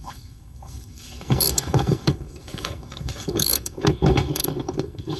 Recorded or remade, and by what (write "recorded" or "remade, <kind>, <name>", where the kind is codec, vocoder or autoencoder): remade, codec, SNAC